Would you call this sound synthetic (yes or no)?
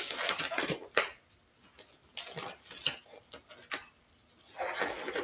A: no